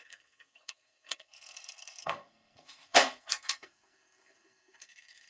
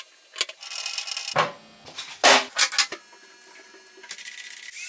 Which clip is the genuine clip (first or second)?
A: second